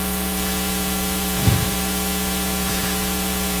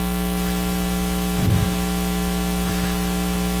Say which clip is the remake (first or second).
first